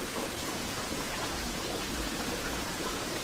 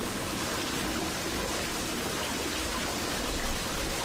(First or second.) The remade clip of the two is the first